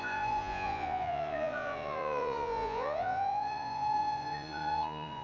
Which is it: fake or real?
fake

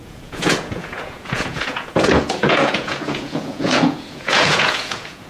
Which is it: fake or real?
fake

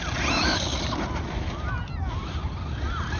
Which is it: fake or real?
real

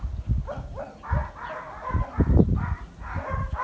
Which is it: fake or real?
real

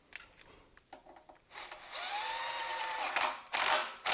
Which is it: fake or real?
real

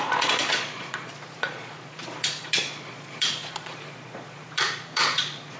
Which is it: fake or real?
fake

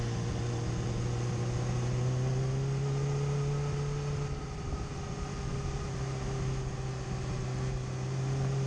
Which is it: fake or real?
real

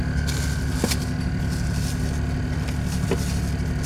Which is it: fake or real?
real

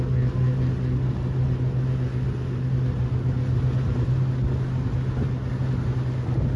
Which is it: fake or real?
real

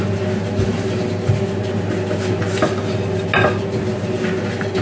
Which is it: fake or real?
real